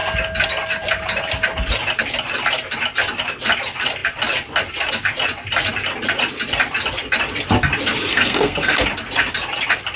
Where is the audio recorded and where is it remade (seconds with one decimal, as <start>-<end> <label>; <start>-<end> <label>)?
0.0-8.1 recorded; 8.1-8.8 remade; 8.8-10.0 recorded